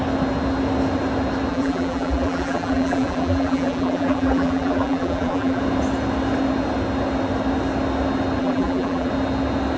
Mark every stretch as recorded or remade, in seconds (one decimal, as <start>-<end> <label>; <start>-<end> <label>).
0.0-1.5 recorded; 1.5-5.6 remade; 5.6-8.4 recorded; 8.4-9.1 remade; 9.1-9.8 recorded